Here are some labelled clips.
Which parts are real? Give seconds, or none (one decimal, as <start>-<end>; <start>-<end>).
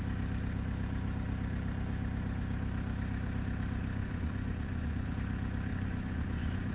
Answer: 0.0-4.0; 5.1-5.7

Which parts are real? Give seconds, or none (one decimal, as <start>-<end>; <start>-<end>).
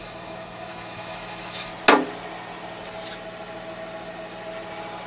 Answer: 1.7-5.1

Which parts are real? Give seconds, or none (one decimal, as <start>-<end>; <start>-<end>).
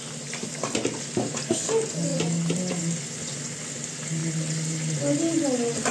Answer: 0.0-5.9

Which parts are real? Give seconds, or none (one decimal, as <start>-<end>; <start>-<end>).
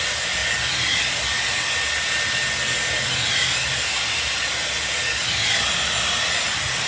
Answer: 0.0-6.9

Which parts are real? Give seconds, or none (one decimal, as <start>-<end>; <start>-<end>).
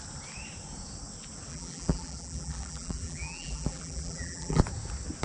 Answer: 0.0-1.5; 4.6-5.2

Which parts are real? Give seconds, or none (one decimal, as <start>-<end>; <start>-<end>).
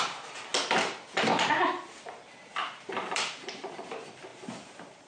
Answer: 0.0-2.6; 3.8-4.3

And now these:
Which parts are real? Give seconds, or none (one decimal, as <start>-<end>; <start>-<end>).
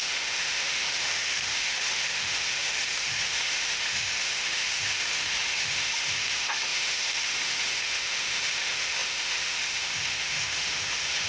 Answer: none